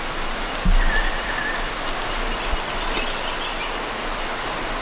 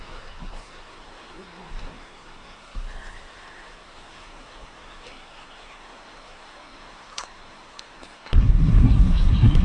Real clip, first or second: first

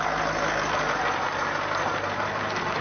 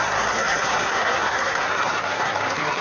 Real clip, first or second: first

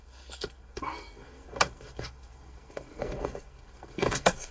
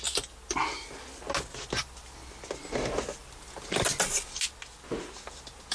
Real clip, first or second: second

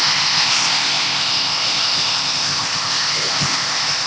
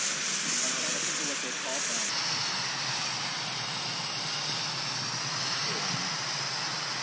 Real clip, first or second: second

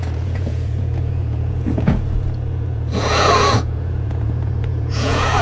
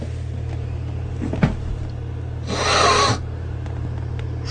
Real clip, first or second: second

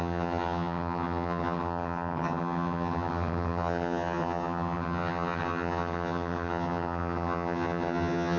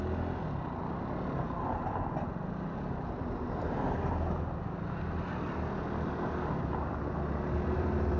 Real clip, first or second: second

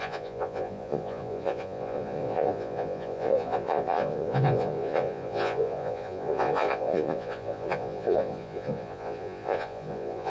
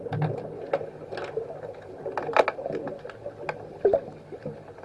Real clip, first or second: second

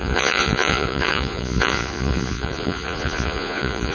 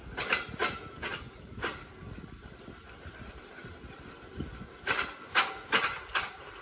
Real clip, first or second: second